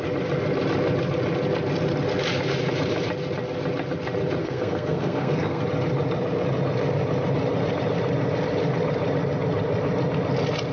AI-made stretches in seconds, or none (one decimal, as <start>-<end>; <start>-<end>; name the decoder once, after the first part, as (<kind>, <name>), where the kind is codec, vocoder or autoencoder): 4.4-5.6 (codec, SNAC)